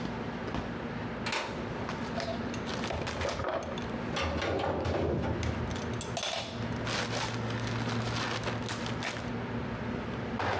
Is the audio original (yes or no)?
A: yes